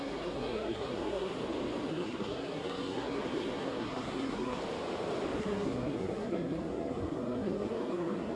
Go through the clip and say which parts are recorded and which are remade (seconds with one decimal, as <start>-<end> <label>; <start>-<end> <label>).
0.0-1.3 remade; 1.3-1.9 recorded; 1.9-4.6 remade; 4.6-5.4 recorded; 5.4-8.4 remade